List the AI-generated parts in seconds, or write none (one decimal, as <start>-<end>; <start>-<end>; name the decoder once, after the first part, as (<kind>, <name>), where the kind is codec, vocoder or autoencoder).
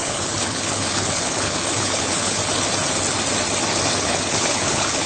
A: 0.0-2.4 (codec, HILCodec); 4.0-5.1